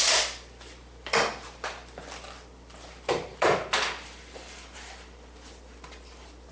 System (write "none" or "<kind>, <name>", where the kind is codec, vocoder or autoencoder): vocoder, BigVGAN v2